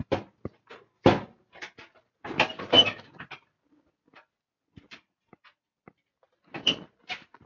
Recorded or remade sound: recorded